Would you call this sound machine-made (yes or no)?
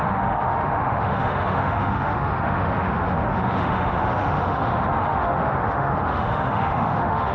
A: yes